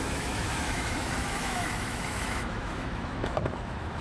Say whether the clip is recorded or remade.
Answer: remade